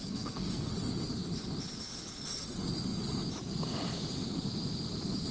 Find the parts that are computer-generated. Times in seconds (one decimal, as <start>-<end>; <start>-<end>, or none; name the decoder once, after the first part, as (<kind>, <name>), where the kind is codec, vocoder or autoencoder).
0.0-0.7 (codec, SNAC)